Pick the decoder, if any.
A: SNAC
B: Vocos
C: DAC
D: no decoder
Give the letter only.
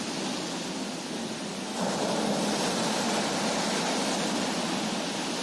D